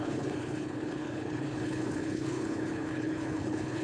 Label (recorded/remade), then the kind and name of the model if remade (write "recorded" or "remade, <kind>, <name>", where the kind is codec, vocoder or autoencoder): remade, codec, HILCodec